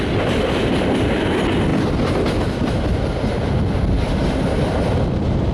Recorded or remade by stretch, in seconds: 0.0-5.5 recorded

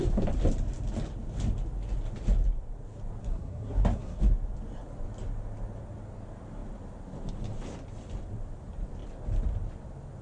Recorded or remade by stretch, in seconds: 0.0-3.2 recorded; 3.2-4.2 remade; 4.2-10.2 recorded

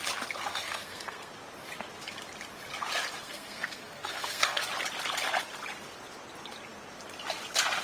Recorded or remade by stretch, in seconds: 0.0-0.5 recorded; 0.5-1.3 remade; 1.3-3.2 recorded; 3.2-4.6 remade; 4.6-7.8 recorded

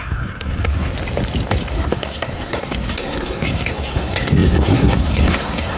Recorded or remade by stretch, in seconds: 0.0-0.9 remade; 0.9-1.7 recorded; 1.7-5.8 remade

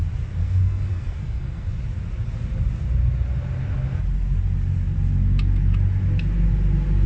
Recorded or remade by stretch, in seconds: 0.0-0.4 recorded; 0.4-1.7 remade; 1.7-7.1 recorded